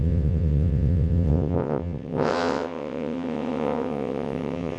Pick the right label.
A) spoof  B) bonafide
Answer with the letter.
A